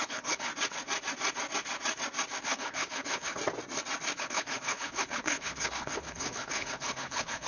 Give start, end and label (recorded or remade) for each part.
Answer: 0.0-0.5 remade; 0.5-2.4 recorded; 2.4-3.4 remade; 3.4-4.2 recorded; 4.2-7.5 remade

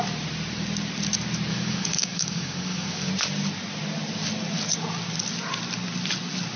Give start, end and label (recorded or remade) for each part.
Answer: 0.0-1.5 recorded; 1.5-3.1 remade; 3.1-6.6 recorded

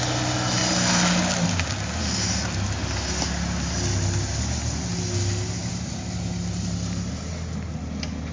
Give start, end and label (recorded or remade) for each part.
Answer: 0.0-0.6 remade; 0.6-2.0 recorded; 2.0-2.8 remade; 2.8-7.7 recorded; 7.7-8.3 remade